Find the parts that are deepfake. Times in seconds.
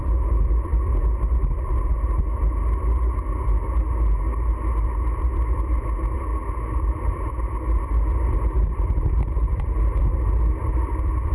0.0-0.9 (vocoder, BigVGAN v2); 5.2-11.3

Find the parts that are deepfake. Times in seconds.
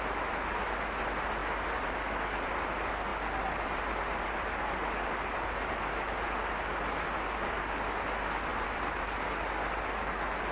1.4-2.5 (vocoder, BigVGAN v2); 3.1-4.6; 8.5-9.2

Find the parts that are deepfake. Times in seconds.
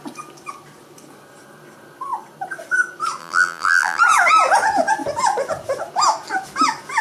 3.2-4.0 (vocoder, BigVGAN v2)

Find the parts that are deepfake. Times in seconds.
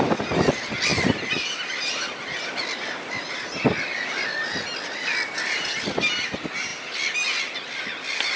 6.7-7.4 (vocoder, BigVGAN v2)